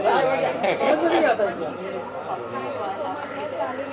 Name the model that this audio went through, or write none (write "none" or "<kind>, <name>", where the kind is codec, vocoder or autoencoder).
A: none